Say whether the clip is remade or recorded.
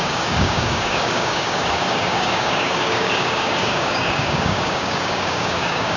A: remade